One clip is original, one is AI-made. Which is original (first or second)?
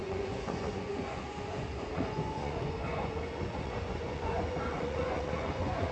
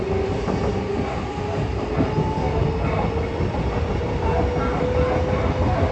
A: second